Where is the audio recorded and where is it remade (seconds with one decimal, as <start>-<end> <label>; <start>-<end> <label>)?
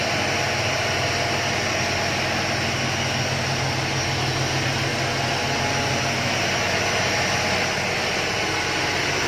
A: 0.0-9.3 recorded